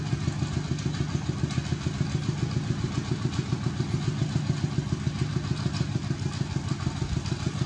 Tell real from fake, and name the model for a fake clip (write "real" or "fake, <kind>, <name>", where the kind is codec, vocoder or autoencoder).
real